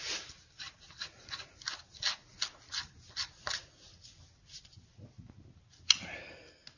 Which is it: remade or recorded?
recorded